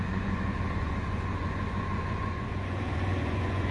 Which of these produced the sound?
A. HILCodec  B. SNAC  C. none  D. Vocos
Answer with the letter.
D